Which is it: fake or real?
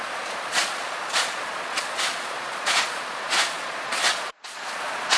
fake